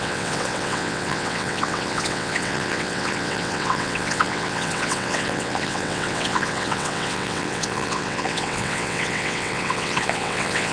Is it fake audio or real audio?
fake